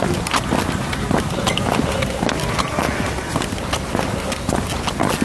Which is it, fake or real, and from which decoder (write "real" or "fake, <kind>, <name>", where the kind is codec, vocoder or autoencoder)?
real